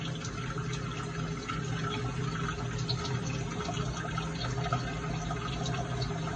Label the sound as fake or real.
real